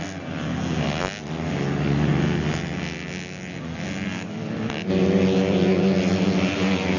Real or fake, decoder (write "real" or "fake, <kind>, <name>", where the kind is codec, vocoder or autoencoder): real